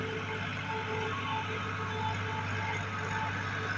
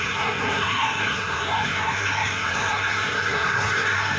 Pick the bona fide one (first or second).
first